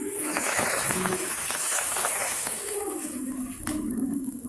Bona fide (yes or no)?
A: no